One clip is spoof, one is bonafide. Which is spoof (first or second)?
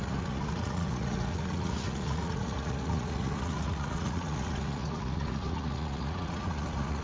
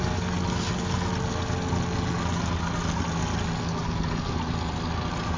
first